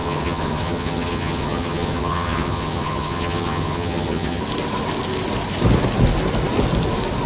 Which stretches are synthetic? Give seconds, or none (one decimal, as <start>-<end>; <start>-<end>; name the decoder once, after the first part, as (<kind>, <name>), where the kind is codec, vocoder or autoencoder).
0.0-4.4 (vocoder, HiFi-GAN)